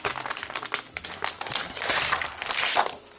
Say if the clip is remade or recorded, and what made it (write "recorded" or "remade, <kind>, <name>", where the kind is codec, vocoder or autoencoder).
recorded